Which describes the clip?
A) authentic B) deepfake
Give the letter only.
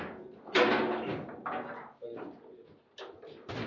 A